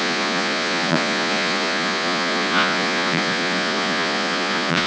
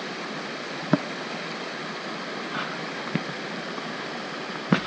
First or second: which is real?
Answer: second